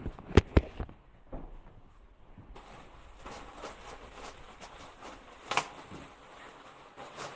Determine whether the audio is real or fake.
real